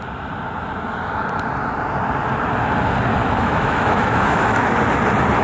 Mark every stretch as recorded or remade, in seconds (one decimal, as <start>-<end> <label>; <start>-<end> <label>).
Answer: 0.0-3.2 recorded; 3.2-4.7 remade; 4.7-5.4 recorded